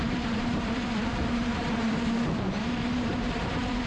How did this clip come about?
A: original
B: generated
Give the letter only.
B